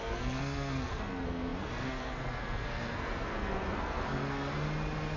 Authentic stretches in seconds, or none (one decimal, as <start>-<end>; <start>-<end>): 4.5-5.2